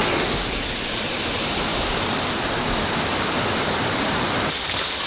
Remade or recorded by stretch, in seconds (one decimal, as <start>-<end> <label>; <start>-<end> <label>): 0.0-5.1 recorded